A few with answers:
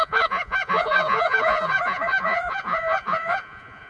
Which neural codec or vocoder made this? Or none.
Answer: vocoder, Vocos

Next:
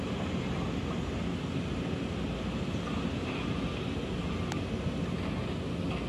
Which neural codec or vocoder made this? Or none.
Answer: none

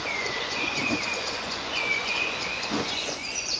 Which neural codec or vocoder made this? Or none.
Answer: vocoder, Vocos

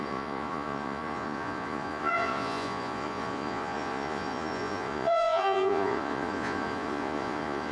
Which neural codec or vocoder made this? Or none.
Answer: vocoder, Vocos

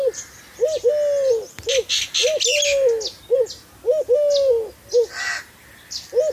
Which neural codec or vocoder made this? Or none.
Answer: none